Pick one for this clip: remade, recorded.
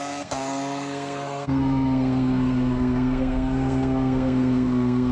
remade